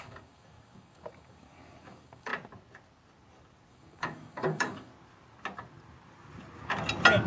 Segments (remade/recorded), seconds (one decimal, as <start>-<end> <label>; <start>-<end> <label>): 0.0-2.3 remade; 2.3-3.7 recorded; 3.7-4.9 remade; 4.9-7.3 recorded